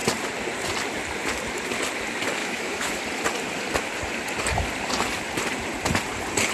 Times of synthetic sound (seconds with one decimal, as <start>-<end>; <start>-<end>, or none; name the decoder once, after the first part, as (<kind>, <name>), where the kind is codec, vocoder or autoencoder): 2.4-3.0 (autoencoder, DAC-VAE)

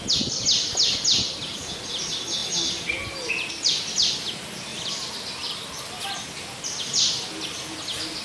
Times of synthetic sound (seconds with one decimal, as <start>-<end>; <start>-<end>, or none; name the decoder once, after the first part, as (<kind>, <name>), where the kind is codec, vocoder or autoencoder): none

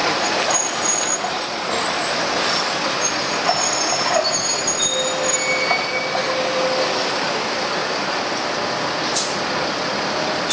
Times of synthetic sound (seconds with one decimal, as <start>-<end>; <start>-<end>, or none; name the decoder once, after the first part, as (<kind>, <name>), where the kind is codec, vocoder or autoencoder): none

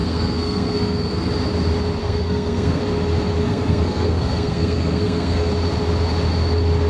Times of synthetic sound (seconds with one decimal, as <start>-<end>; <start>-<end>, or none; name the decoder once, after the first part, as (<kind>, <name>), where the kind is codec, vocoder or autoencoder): 0.0-1.3 (codec, SNAC); 2.0-2.8; 3.4-5.5